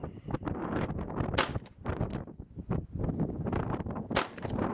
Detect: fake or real real